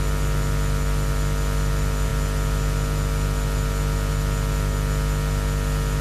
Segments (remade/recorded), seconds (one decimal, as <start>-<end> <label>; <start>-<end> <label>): 0.0-6.0 recorded